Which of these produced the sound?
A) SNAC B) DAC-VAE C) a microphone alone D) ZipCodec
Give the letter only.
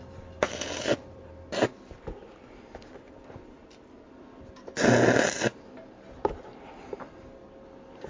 C